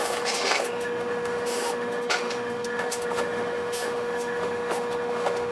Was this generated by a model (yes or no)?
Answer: yes